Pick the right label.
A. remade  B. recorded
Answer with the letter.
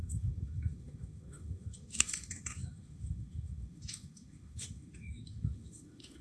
A